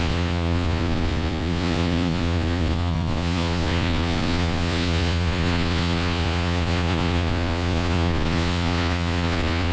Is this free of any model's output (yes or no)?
no